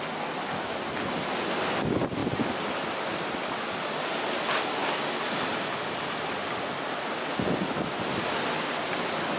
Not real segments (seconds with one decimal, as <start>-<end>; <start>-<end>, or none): none